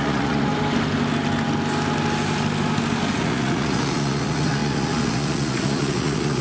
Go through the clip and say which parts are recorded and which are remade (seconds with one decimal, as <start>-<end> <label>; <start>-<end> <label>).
0.0-0.5 remade; 0.5-3.1 recorded; 3.1-6.4 remade